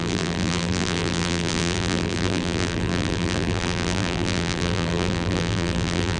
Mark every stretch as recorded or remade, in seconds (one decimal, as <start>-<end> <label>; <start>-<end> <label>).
0.0-6.2 remade